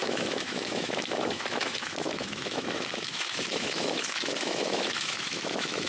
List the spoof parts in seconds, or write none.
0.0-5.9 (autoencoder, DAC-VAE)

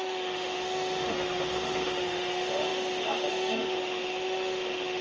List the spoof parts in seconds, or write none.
0.0-5.0 (autoencoder, DAC-VAE)

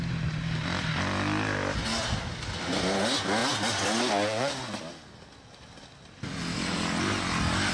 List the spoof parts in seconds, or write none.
none